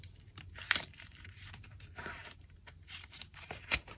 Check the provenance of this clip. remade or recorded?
remade